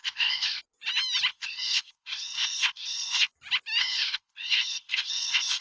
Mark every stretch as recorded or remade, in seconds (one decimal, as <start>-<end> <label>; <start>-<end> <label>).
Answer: 0.0-0.6 remade; 0.6-1.3 recorded; 1.3-3.3 remade; 3.3-3.8 recorded; 3.8-5.6 remade